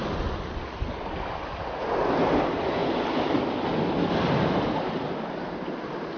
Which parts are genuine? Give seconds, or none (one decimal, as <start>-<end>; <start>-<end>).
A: 0.0-6.2